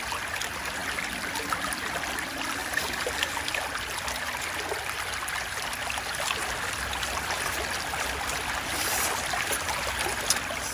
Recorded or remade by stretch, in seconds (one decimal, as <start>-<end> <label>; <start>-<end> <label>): 0.0-10.7 recorded